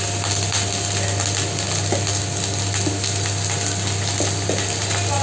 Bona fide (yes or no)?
yes